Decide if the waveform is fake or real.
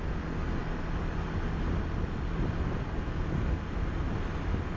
real